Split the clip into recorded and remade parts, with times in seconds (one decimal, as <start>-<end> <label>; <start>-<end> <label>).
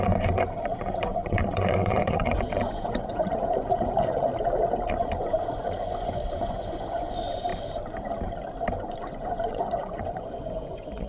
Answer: 0.0-4.3 remade; 4.3-4.9 recorded; 4.9-7.5 remade; 7.5-9.0 recorded; 9.0-11.1 remade